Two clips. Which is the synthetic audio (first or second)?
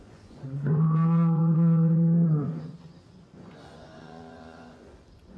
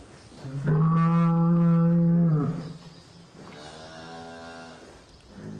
first